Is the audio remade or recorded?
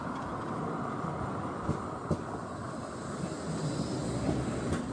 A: recorded